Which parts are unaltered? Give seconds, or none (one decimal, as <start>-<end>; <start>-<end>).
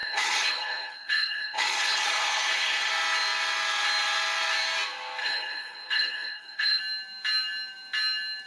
2.9-5.2; 6.8-8.5